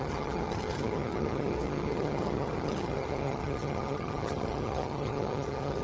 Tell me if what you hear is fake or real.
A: fake